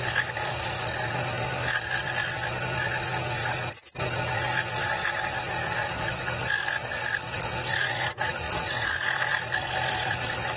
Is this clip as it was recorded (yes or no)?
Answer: yes